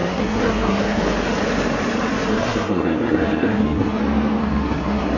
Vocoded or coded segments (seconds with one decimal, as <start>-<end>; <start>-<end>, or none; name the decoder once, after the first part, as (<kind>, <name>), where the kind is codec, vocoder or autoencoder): 0.0-1.0 (codec, SNAC); 2.3-4.0; 4.4-5.2